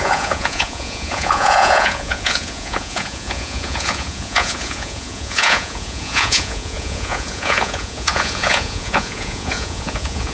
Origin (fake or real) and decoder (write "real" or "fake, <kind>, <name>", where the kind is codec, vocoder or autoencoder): fake, vocoder, Vocos